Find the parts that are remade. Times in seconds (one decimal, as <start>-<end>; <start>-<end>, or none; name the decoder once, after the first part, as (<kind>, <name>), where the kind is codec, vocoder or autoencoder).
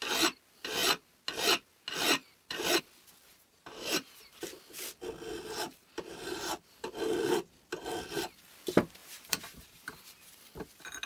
3.3-4.4 (vocoder, BigVGAN v2); 5.7-7.1; 9.0-10.4